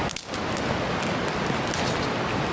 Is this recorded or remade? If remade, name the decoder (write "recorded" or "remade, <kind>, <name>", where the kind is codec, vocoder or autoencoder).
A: recorded